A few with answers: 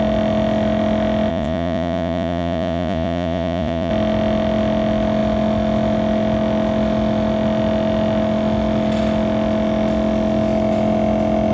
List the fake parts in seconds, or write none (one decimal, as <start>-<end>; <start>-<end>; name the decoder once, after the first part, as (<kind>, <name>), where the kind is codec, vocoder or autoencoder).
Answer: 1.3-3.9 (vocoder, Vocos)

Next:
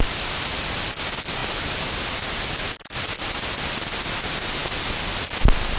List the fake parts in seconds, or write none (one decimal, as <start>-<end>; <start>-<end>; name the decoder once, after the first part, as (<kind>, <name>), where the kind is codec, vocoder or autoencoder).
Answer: none

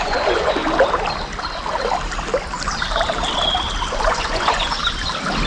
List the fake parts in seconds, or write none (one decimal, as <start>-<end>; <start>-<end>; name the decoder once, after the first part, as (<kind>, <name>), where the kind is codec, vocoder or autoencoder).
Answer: 0.0-0.6 (vocoder, Vocos); 3.9-4.8